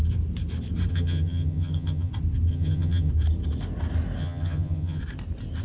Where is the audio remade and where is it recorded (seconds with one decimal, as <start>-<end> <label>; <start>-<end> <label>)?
0.0-0.9 recorded; 0.9-2.1 remade; 2.1-2.5 recorded; 2.5-3.1 remade; 3.1-4.2 recorded; 4.2-5.0 remade; 5.0-5.6 recorded